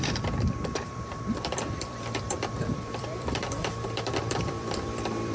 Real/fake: fake